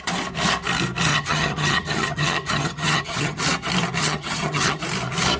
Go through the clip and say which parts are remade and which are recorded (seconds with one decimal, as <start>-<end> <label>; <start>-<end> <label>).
0.0-1.1 recorded; 1.1-3.4 remade; 3.4-4.0 recorded; 4.0-4.8 remade; 4.8-5.4 recorded